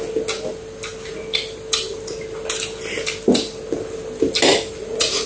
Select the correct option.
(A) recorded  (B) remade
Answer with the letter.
A